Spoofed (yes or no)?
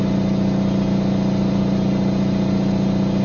no